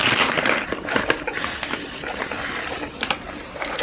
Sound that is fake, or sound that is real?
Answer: real